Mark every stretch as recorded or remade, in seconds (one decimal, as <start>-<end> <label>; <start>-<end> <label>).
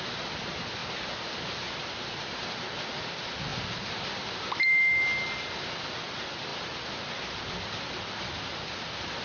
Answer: 0.0-9.2 recorded